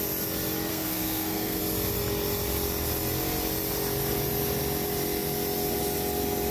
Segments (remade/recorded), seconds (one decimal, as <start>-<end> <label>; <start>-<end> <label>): 0.0-0.7 recorded; 0.7-1.6 remade; 1.6-6.5 recorded